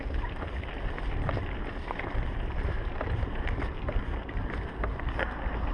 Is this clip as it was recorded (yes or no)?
yes